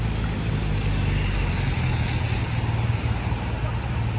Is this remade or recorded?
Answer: recorded